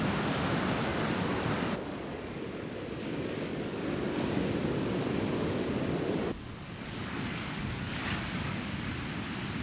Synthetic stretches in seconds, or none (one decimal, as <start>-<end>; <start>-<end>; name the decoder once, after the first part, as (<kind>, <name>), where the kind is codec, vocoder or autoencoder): 0.9-3.8 (codec, DAC); 4.6-9.0